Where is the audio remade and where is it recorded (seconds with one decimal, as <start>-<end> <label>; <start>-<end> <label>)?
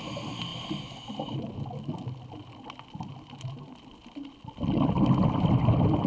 0.0-6.1 recorded